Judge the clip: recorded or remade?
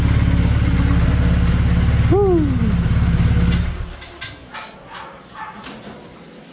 recorded